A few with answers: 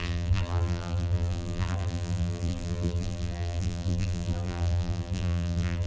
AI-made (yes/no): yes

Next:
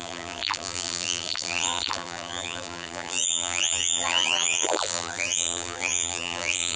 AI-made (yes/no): yes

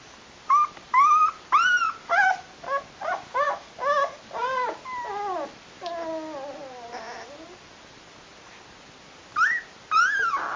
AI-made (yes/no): no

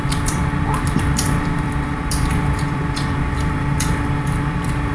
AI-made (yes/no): yes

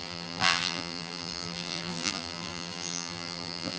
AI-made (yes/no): yes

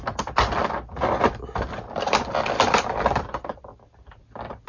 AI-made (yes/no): no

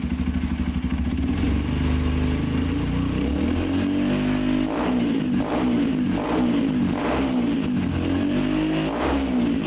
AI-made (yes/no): no